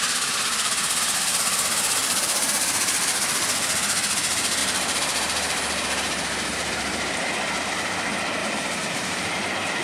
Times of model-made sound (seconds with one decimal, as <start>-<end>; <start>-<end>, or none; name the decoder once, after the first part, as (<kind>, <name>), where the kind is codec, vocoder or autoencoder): 2.0-2.5 (vocoder, BigVGAN v2); 4.6-7.7; 8.4-9.3